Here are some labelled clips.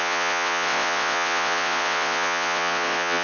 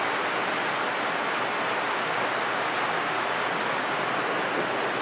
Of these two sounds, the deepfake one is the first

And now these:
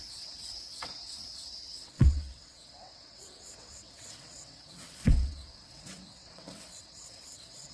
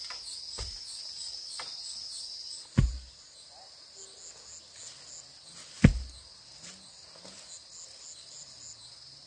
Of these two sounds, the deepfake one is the first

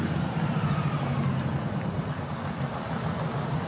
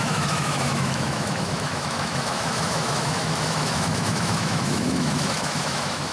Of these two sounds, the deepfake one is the second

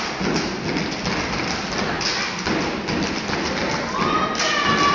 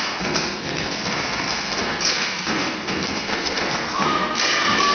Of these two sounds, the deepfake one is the second